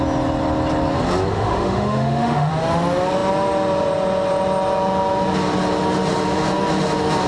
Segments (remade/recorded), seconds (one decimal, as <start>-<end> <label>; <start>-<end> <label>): 0.0-1.3 recorded; 1.3-2.5 remade; 2.5-7.3 recorded